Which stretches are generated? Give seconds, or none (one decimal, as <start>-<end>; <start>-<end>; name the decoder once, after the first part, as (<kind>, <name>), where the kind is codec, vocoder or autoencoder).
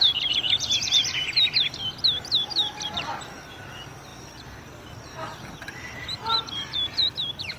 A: 0.0-1.0 (vocoder, BigVGAN v2); 2.5-7.6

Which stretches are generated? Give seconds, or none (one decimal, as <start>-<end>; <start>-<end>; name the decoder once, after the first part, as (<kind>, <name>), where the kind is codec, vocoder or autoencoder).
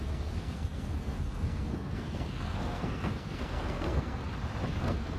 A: 0.0-4.2 (codec, SNAC); 4.8-5.2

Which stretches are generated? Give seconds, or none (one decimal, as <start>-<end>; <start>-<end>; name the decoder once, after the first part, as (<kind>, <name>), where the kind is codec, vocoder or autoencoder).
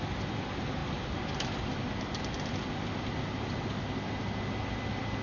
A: none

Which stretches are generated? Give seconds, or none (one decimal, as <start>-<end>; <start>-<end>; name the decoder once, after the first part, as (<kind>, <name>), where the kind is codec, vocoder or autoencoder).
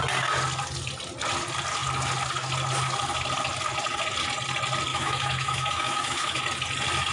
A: 4.9-6.4 (autoencoder, DAC-VAE)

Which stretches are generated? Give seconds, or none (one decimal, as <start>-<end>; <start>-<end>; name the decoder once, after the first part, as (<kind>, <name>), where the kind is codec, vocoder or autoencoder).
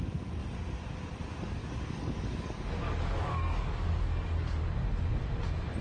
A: 1.6-4.6 (codec, DAC)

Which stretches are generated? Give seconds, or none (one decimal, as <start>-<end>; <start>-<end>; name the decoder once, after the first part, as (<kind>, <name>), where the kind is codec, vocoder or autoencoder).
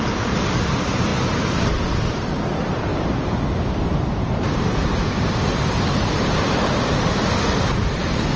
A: 1.1-1.8 (vocoder, BigVGAN v2); 2.9-3.5; 4.2-7.3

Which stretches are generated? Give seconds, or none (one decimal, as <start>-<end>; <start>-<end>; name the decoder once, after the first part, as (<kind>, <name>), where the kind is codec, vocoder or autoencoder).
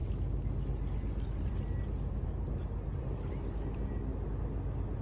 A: none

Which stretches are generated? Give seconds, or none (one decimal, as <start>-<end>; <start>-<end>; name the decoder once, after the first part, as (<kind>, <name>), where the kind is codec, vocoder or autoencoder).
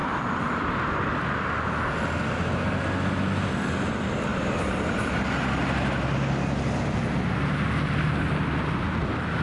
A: none